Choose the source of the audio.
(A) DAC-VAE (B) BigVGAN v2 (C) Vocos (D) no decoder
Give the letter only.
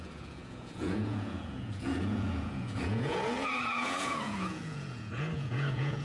C